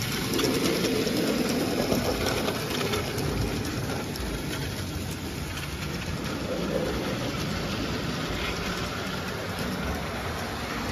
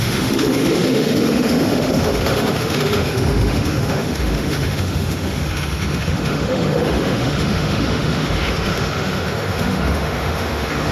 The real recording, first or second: first